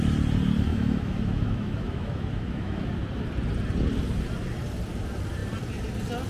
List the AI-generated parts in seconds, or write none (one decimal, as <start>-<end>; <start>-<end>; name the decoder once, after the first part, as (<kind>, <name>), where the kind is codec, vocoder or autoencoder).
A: 0.7-2.9 (autoencoder, DAC-VAE)